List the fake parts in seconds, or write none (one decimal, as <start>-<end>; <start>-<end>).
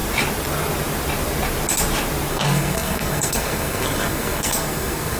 2.3-5.2